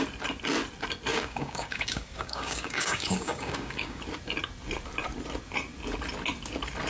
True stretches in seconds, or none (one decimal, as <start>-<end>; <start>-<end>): 0.0-1.1; 4.0-6.9